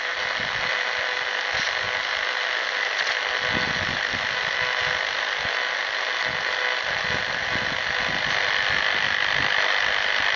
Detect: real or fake real